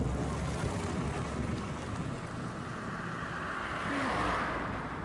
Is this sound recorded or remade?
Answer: recorded